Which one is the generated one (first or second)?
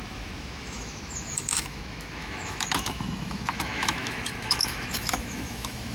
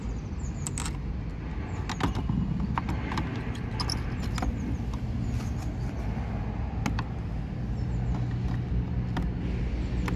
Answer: first